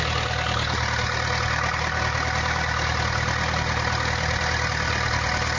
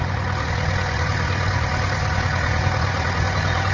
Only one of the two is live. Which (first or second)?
first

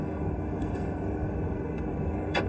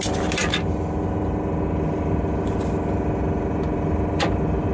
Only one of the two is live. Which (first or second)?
second